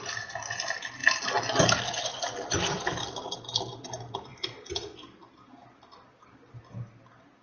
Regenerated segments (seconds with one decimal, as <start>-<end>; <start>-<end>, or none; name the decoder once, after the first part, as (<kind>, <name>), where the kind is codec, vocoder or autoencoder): none